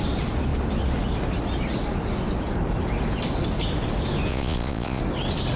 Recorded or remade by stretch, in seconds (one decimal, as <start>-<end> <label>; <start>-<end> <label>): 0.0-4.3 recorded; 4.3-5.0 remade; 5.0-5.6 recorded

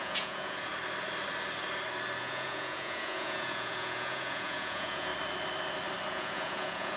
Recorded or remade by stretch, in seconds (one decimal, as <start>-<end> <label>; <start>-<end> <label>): 0.0-0.7 remade; 0.7-2.2 recorded; 2.2-5.1 remade; 5.1-6.1 recorded; 6.1-7.0 remade

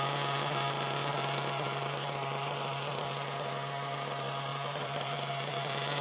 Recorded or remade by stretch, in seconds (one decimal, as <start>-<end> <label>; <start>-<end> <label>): 0.0-1.1 recorded; 1.1-3.0 remade; 3.0-4.5 recorded; 4.5-5.3 remade; 5.3-6.0 recorded